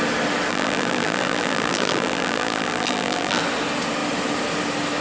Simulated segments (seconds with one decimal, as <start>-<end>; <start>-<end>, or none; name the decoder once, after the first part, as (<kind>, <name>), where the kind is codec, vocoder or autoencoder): 0.5-3.4 (vocoder, BigVGAN v2)